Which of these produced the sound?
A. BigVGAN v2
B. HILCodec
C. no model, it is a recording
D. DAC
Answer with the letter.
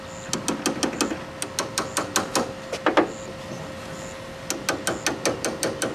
C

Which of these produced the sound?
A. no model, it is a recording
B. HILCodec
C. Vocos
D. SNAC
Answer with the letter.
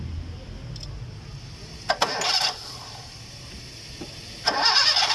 A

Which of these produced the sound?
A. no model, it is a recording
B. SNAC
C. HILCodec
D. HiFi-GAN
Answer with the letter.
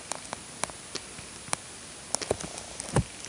A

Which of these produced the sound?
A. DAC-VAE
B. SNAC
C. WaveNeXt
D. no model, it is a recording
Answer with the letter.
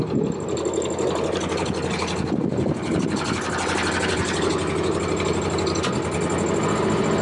D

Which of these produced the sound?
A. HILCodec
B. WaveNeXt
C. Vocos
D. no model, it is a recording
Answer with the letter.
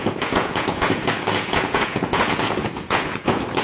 C